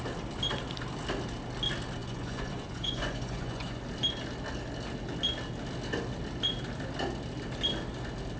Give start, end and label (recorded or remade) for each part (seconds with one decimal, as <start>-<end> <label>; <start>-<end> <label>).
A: 0.0-2.0 recorded; 2.0-3.8 remade; 3.8-8.4 recorded